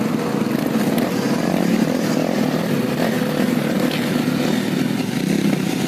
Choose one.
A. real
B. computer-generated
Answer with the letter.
A